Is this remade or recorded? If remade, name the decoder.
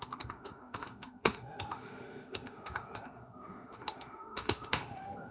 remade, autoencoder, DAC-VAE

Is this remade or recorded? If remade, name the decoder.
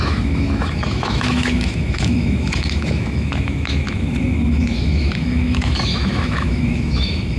remade, autoencoder, DAC-VAE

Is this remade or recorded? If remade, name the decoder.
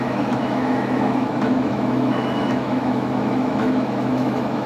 remade, autoencoder, DAC-VAE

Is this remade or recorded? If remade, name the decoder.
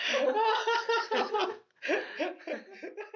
recorded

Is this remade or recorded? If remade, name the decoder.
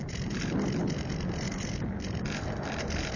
recorded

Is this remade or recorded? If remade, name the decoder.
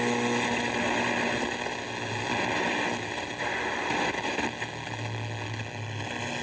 recorded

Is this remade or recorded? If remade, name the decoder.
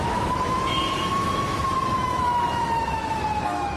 remade, autoencoder, DAC-VAE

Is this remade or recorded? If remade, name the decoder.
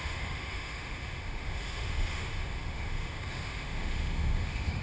remade, autoencoder, DAC-VAE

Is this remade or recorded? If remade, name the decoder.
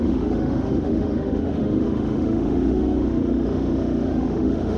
remade, autoencoder, DAC-VAE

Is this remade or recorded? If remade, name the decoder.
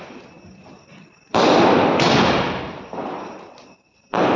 recorded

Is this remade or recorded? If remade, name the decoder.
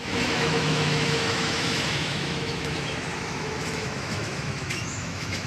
remade, autoencoder, DAC-VAE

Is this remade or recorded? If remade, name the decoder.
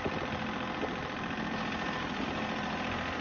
recorded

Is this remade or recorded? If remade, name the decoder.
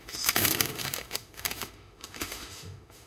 remade, autoencoder, DAC-VAE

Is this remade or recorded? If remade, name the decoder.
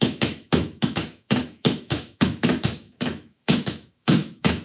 remade, autoencoder, DAC-VAE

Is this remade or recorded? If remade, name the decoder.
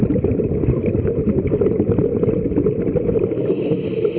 recorded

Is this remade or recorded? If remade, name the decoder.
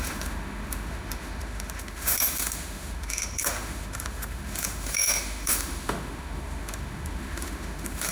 remade, autoencoder, DAC-VAE